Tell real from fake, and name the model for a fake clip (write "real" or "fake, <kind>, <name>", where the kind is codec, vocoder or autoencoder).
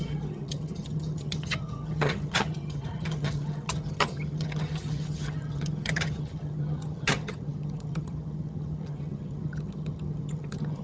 fake, vocoder, HiFi-GAN